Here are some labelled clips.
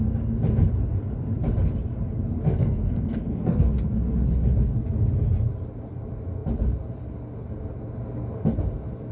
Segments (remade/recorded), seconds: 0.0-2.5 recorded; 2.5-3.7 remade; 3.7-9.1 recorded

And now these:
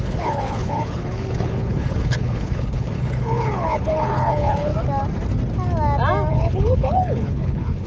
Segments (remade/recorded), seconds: 0.0-4.7 remade; 4.7-6.3 recorded; 6.3-7.9 remade

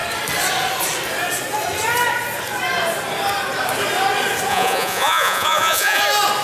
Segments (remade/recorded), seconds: 0.0-4.5 recorded; 4.5-6.0 remade; 6.0-6.4 recorded

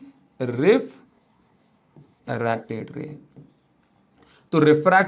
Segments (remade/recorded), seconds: 0.0-1.0 recorded; 1.0-2.7 remade; 2.7-5.1 recorded